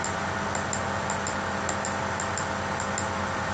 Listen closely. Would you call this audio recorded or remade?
recorded